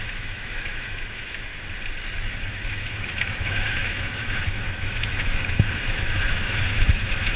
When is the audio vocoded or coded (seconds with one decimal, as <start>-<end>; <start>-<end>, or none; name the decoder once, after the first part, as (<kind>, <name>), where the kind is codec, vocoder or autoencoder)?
0.0-1.5 (autoencoder, DAC-VAE); 2.5-7.4